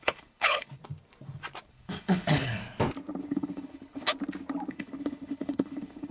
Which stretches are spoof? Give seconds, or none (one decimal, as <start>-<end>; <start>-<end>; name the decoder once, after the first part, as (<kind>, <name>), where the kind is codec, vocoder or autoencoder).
0.0-0.8 (codec, HILCodec); 1.7-2.6; 3.2-4.1; 4.7-6.1